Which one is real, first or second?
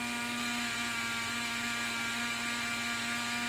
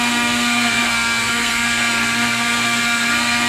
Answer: first